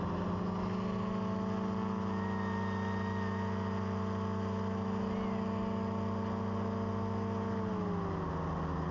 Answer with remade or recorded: recorded